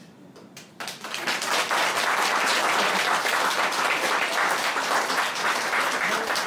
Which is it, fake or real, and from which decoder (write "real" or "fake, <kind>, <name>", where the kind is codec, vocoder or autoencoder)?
fake, vocoder, BigVGAN v2